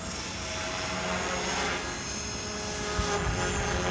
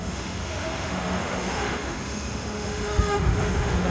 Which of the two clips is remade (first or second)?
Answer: second